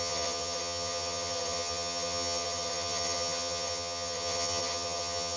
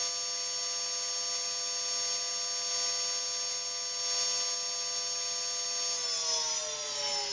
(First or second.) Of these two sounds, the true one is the second